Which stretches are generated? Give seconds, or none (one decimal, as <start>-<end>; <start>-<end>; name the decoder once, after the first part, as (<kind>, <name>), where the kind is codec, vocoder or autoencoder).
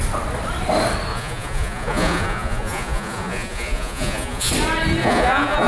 1.1-4.5 (vocoder, Vocos); 5.0-5.7